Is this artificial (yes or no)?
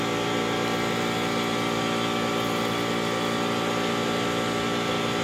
no